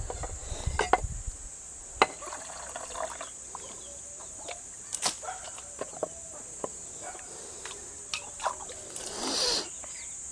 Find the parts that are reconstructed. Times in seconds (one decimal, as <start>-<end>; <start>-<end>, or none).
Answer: none